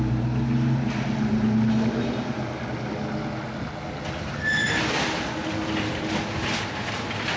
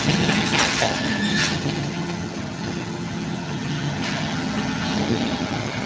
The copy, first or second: second